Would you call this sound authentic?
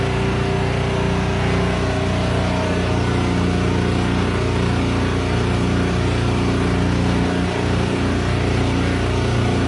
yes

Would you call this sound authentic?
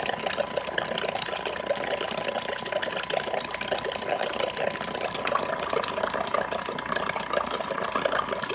yes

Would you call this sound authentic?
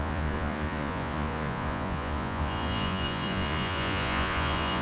no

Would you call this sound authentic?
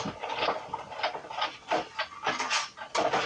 yes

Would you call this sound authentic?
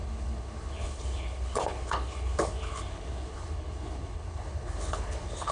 no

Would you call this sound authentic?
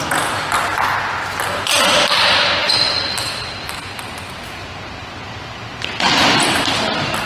yes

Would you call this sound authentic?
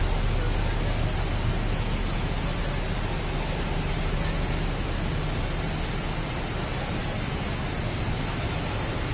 yes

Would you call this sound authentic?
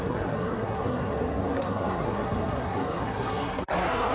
no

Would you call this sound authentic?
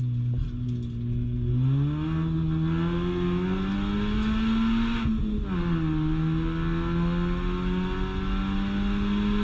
yes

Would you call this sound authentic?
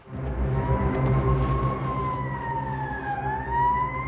yes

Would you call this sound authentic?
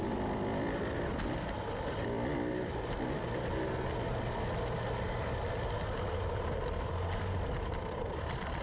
yes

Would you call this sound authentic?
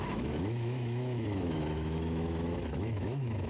no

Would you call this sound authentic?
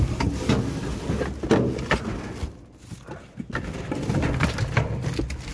yes